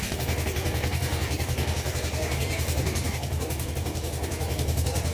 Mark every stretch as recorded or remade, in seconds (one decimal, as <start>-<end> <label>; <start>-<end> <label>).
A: 0.0-5.1 remade